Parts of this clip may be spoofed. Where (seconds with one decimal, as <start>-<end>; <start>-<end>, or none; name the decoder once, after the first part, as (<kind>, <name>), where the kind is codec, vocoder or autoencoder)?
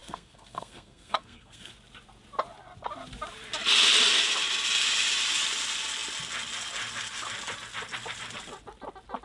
0.0-1.7 (codec, SNAC)